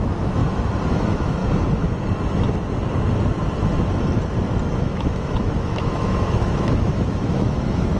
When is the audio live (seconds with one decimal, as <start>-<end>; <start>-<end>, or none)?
0.4-0.9; 1.4-4.8